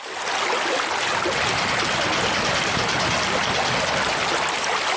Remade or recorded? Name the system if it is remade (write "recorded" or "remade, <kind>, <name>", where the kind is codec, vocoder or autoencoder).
recorded